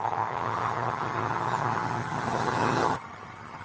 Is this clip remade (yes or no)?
yes